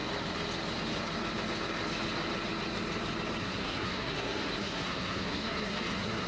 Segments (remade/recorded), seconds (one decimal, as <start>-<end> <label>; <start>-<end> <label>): 0.0-3.4 recorded; 3.4-6.3 remade